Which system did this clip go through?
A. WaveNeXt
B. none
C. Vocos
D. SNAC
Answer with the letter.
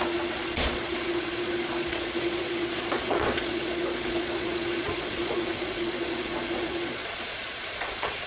C